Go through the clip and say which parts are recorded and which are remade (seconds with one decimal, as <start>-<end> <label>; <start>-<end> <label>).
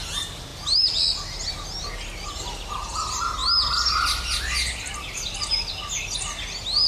0.0-6.9 recorded